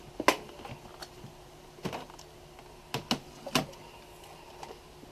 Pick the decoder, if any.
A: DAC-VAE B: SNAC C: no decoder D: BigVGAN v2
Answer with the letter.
C